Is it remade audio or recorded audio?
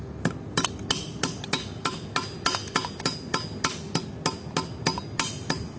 recorded